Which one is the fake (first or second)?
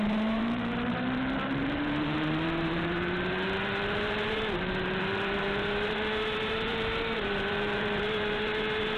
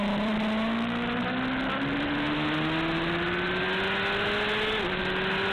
first